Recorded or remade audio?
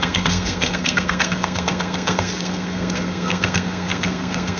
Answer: remade